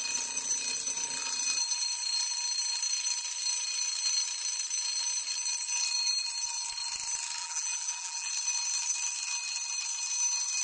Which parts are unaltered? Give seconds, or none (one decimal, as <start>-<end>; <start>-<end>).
0.0-7.4; 8.3-10.6